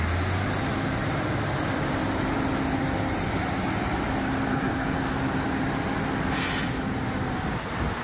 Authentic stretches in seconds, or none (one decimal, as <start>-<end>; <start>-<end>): 0.0-4.5; 5.1-8.0